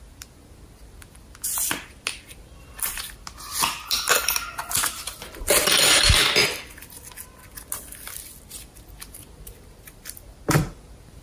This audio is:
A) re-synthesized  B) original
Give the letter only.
B